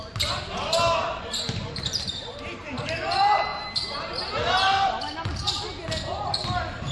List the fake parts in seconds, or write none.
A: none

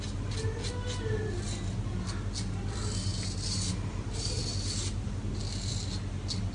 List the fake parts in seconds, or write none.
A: none